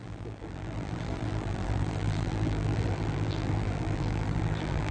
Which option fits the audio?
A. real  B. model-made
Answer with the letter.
B